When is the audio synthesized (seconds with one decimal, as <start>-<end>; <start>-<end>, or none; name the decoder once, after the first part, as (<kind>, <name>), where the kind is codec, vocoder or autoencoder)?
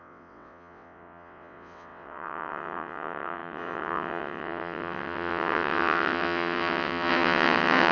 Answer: 0.0-7.9 (vocoder, WaveNeXt)